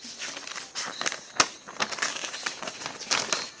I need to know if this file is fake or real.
real